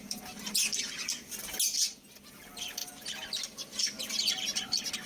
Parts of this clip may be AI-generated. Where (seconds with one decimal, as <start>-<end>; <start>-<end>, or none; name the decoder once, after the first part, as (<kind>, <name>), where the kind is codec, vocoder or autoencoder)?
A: none